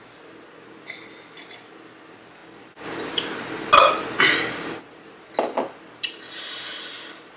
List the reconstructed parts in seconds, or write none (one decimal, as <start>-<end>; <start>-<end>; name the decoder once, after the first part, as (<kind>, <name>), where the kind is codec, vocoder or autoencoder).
none